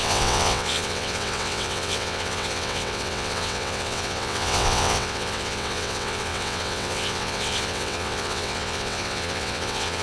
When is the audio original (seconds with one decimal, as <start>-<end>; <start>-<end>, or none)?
none